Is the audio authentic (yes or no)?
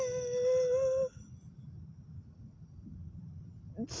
yes